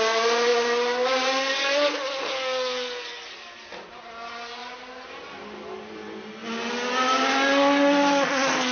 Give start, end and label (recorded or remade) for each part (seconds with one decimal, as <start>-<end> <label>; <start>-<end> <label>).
0.0-8.7 recorded